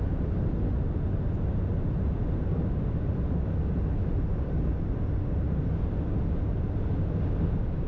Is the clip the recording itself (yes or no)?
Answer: yes